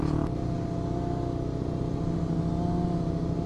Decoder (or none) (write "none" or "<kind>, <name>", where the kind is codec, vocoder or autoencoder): none